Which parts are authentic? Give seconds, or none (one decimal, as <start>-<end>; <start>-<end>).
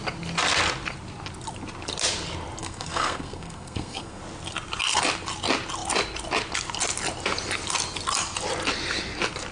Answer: 0.0-2.6; 4.2-9.5